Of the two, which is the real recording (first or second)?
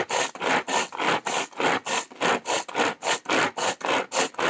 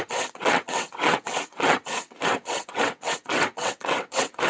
first